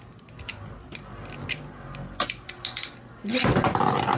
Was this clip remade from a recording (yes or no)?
no